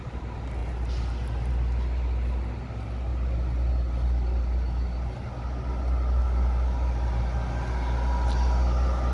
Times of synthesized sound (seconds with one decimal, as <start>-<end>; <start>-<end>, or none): none